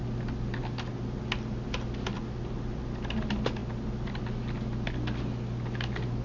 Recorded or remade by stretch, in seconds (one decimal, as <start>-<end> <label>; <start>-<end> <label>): 0.0-6.2 recorded